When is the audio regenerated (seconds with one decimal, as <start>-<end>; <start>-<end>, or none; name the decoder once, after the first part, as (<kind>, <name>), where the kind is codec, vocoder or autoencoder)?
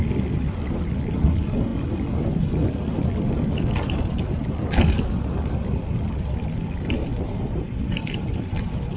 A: none